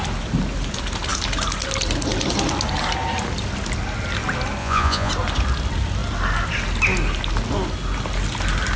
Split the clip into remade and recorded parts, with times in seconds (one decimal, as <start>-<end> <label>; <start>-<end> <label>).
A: 0.0-4.6 recorded; 4.6-5.1 remade; 5.1-8.8 recorded